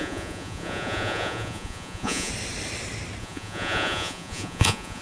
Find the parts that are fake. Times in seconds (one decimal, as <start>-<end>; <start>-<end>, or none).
0.0-2.3; 3.2-5.0